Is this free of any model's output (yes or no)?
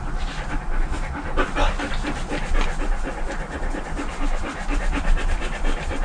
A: yes